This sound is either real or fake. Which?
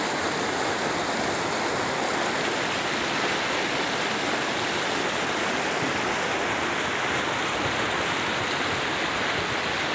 real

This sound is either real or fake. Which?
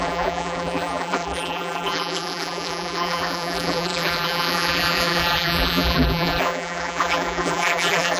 fake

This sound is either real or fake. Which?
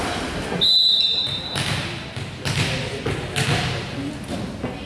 real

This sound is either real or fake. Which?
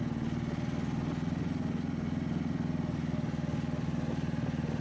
real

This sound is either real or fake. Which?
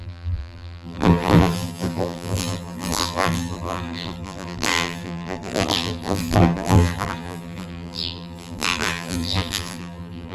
fake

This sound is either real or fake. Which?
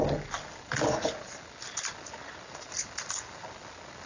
real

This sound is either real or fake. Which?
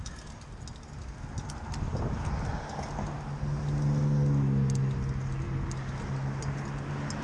real